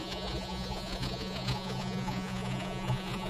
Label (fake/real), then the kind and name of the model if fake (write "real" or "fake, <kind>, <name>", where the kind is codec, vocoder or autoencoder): fake, vocoder, Vocos